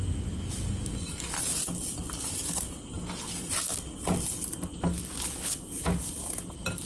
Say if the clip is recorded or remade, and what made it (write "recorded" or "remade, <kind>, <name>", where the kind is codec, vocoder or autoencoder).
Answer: recorded